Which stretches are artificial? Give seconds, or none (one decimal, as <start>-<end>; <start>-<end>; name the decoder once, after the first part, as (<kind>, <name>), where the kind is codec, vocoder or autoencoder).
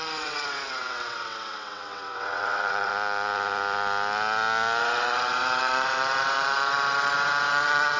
0.0-2.9 (vocoder, WaveNeXt); 4.8-8.0